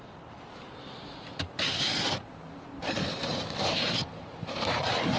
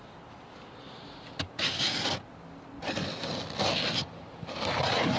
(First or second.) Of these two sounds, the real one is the second